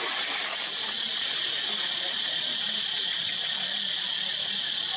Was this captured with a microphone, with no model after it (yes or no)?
yes